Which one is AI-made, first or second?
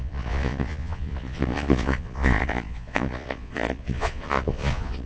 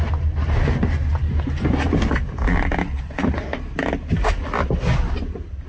first